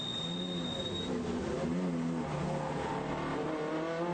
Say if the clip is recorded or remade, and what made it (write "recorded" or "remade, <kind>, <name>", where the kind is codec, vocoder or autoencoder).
recorded